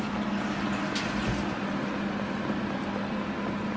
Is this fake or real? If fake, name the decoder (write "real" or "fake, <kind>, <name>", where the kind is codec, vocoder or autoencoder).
real